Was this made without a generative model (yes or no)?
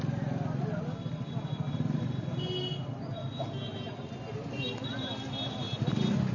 yes